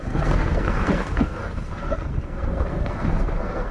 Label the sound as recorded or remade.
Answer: remade